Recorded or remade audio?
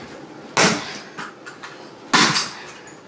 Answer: recorded